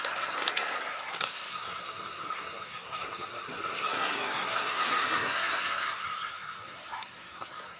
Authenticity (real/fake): fake